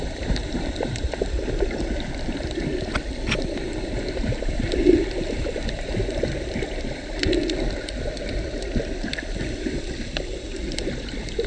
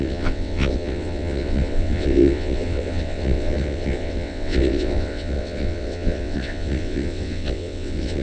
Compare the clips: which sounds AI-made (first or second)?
second